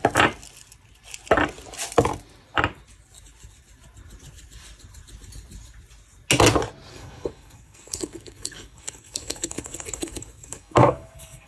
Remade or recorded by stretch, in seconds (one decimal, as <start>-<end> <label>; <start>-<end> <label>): 0.0-6.9 recorded; 6.9-11.5 remade